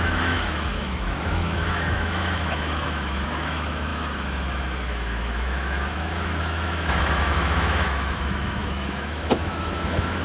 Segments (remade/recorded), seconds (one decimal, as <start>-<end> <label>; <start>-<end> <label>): 0.0-10.2 remade